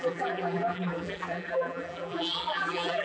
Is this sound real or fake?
fake